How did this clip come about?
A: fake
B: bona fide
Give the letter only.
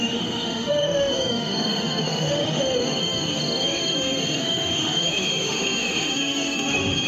A